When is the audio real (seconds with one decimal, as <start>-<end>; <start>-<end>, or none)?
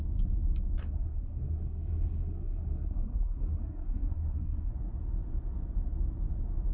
0.0-0.8; 4.7-6.7